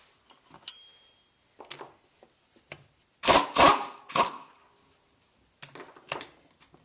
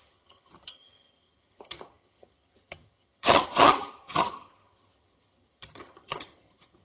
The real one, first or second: first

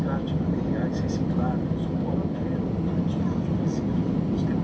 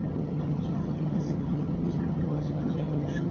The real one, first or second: first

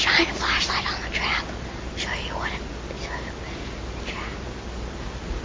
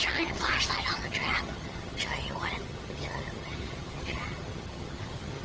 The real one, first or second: first